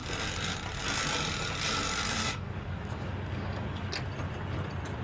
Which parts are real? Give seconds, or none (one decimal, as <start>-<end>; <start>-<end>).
0.0-2.2; 3.9-5.0